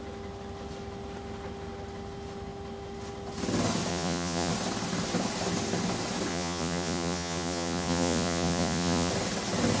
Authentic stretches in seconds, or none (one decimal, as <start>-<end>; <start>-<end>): 0.0-3.9; 4.5-6.3; 9.1-9.8